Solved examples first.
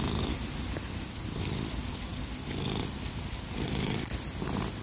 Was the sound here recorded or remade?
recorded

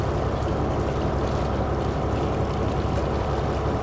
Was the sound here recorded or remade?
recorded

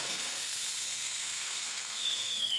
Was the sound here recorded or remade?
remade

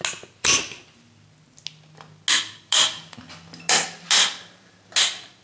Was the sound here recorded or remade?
recorded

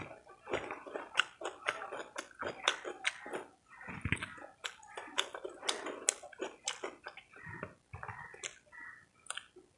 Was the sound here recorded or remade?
recorded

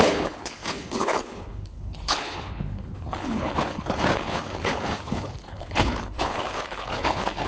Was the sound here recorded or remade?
remade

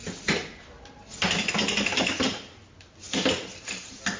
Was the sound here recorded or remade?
recorded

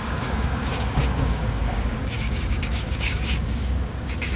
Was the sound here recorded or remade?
remade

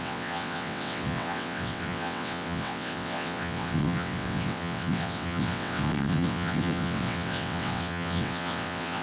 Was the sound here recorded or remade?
remade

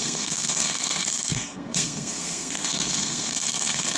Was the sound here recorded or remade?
remade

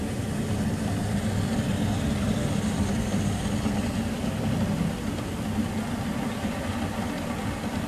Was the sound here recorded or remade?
recorded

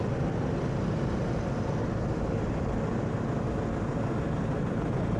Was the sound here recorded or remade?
recorded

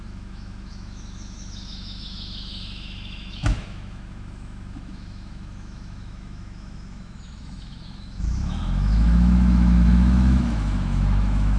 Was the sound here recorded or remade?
remade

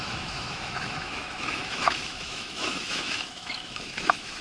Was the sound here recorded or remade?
remade